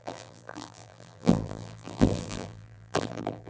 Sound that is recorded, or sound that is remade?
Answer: remade